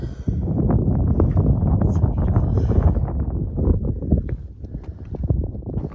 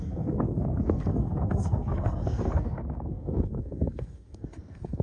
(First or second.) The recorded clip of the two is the first